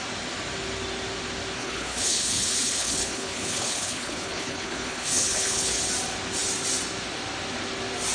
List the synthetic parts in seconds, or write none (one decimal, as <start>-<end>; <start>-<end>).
1.6-5.8

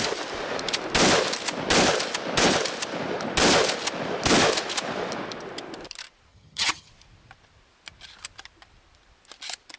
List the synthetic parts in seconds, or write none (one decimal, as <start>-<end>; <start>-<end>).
6.3-6.9